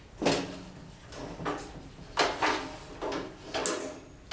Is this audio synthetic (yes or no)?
no